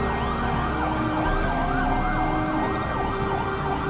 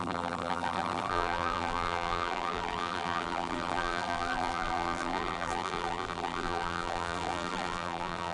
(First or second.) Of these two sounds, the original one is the first